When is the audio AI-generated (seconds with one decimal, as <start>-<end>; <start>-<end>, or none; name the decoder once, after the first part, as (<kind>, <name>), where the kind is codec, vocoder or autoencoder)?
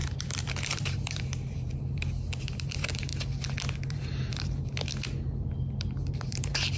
0.0-3.1 (vocoder, BigVGAN v2); 3.9-4.9; 5.7-6.8